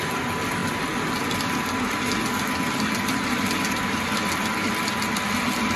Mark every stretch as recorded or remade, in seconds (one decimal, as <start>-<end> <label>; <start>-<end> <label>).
0.0-5.8 recorded

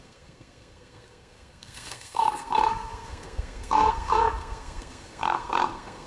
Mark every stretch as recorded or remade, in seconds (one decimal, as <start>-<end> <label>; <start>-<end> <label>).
0.0-6.1 remade